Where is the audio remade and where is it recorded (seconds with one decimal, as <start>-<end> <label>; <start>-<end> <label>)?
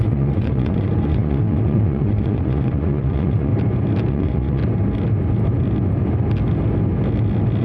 0.0-3.5 remade; 3.5-4.1 recorded; 4.1-4.6 remade; 4.6-7.6 recorded